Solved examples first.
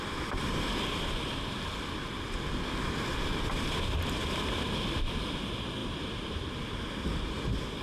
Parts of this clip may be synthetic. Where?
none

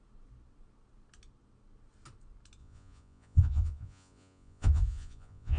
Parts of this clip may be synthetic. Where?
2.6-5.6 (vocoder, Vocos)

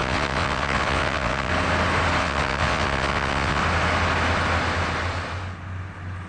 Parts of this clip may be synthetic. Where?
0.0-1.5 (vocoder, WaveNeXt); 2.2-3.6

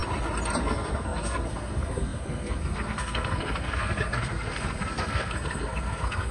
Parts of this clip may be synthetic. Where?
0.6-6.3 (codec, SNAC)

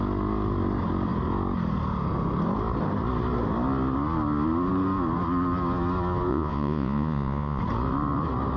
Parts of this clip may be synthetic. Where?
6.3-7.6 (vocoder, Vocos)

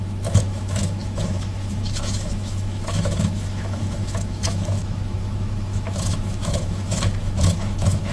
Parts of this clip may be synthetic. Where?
0.0-8.1 (autoencoder, DAC-VAE)

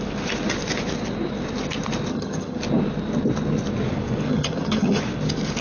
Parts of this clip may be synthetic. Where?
2.1-2.6 (vocoder, HiFi-GAN); 4.3-5.0

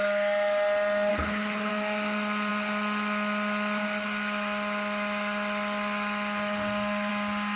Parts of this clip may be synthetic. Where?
1.1-1.7 (codec, HILCodec)